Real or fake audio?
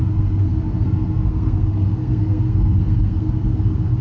fake